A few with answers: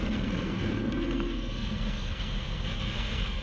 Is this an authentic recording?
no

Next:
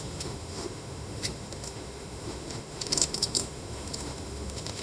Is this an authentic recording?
no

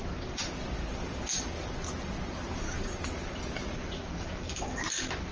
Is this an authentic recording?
yes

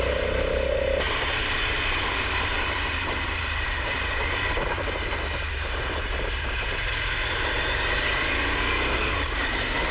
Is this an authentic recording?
no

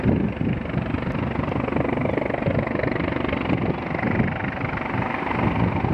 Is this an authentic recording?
yes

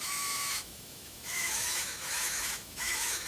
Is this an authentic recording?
no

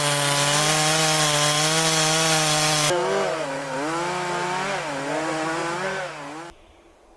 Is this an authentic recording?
yes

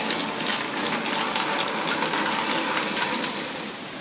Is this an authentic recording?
yes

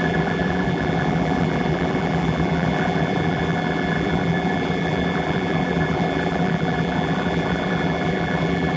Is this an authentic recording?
no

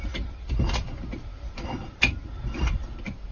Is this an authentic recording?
yes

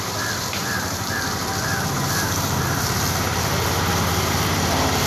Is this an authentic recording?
no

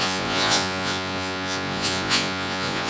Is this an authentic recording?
no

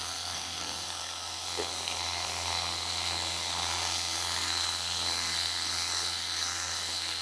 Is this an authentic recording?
no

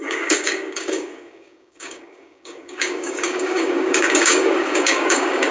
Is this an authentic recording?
no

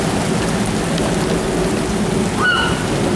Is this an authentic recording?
yes